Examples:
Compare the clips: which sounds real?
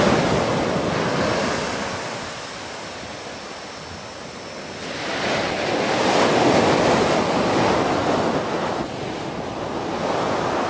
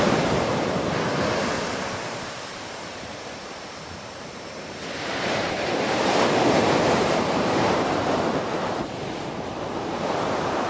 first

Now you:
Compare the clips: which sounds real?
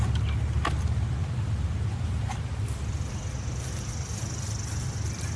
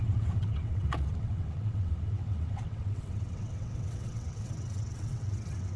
first